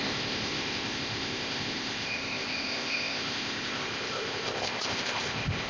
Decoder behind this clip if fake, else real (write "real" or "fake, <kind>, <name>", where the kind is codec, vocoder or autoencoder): fake, codec, ZipCodec